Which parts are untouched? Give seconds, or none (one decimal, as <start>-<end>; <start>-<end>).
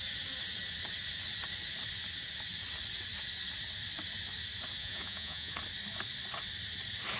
0.0-4.8; 5.5-7.2